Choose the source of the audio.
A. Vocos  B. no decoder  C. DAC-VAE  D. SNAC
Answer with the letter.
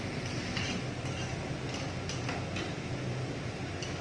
B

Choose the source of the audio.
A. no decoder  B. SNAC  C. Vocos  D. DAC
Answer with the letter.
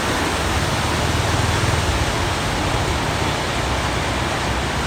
A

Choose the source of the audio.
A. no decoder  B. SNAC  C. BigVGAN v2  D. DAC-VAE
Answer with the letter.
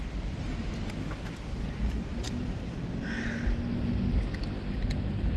A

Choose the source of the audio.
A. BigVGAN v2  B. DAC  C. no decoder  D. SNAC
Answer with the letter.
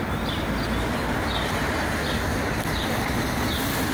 C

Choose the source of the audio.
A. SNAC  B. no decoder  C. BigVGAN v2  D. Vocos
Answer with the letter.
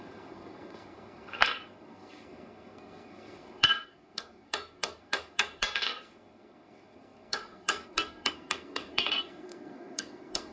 A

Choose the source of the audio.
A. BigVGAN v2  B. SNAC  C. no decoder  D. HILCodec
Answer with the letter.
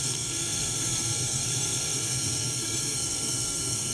B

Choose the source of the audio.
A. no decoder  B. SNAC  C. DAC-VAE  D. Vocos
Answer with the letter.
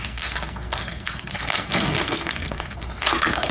B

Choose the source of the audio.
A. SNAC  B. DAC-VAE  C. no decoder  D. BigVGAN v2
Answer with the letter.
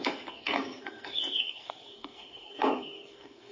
A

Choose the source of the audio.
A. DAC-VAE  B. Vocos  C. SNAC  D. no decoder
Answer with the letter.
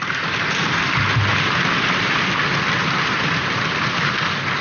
D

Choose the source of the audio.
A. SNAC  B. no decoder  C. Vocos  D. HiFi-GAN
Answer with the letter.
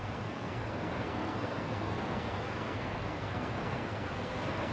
A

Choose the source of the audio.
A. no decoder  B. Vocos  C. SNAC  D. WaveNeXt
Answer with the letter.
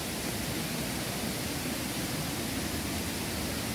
A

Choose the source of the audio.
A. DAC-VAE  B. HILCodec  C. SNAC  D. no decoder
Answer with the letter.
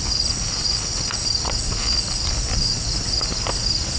D